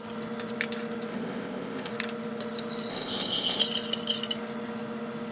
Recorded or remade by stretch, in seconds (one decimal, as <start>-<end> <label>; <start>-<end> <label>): 0.0-1.1 recorded; 1.1-1.9 remade; 1.9-2.9 recorded; 2.9-3.6 remade; 3.6-5.3 recorded